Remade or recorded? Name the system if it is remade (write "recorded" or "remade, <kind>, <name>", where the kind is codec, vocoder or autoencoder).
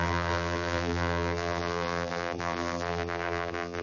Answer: remade, vocoder, BigVGAN v2